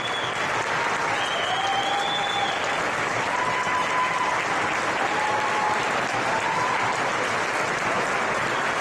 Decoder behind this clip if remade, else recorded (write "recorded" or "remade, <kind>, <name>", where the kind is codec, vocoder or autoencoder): recorded